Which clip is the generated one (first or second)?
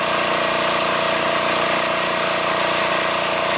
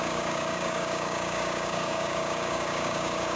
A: second